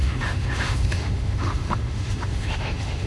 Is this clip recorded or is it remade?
remade